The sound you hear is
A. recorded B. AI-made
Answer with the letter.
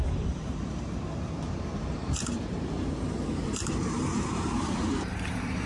B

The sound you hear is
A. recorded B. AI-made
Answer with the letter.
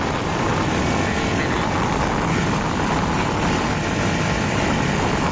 B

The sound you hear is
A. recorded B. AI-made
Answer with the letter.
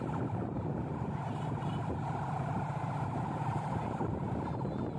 A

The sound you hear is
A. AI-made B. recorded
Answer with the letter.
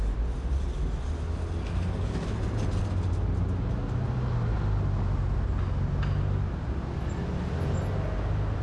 B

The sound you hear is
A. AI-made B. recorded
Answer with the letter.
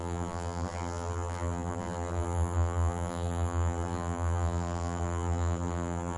A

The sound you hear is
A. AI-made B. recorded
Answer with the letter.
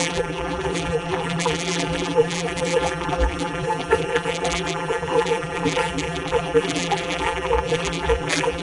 A